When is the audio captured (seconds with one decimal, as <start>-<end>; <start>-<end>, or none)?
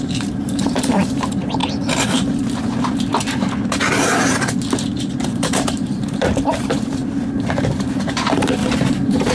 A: 1.6-5.0; 7.0-7.7